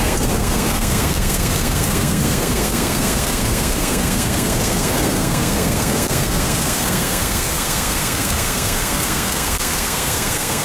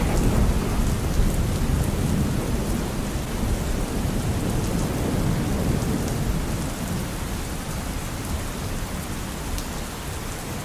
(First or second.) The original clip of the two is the second